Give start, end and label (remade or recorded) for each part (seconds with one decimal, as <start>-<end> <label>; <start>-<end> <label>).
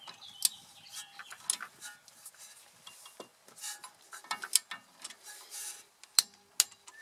0.0-7.0 recorded